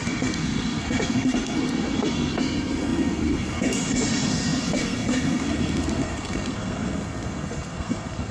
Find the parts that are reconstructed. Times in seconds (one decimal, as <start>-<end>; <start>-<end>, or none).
0.0-8.3